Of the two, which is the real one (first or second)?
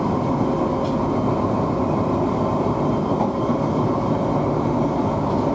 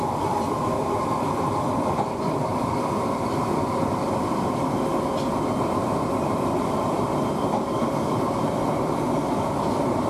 first